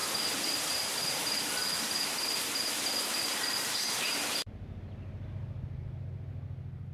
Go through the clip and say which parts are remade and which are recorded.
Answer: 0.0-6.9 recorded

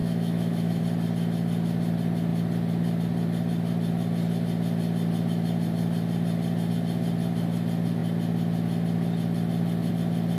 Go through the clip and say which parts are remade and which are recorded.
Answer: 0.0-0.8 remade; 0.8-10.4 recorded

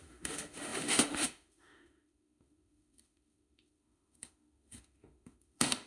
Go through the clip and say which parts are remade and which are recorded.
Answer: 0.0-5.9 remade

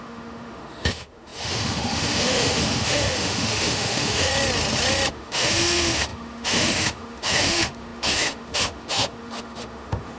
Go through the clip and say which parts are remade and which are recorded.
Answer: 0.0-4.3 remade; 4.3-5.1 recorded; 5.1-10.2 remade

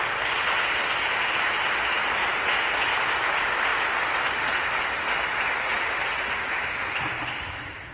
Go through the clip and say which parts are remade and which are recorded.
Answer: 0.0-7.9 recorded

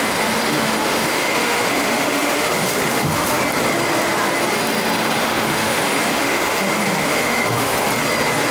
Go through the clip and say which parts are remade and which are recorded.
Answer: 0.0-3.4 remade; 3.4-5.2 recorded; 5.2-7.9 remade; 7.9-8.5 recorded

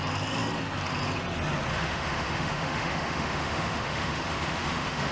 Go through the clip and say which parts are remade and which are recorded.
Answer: 0.0-1.7 recorded; 1.7-5.1 remade